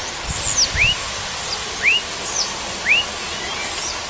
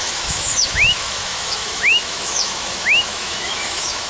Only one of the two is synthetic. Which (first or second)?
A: second